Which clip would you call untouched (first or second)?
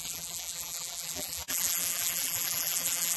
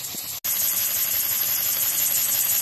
second